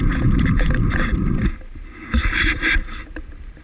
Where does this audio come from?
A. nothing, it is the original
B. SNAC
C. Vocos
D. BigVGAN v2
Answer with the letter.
A